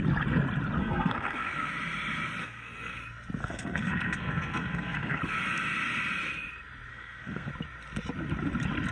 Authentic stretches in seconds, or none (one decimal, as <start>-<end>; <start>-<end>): 0.0-0.8; 1.7-2.4; 3.0-3.4; 5.2-6.9; 7.5-8.9